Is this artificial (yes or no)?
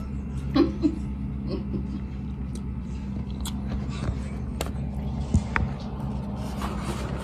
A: no